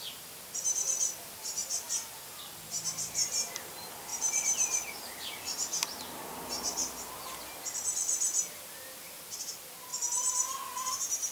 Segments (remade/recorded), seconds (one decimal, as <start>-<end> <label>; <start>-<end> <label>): 0.0-9.9 recorded; 9.9-10.9 remade; 10.9-11.3 recorded